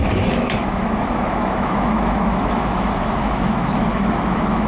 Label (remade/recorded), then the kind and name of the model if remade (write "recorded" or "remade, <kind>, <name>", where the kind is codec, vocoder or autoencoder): remade, autoencoder, DAC-VAE